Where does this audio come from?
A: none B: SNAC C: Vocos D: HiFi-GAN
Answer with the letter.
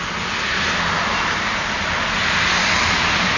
A